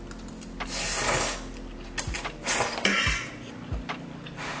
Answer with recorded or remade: recorded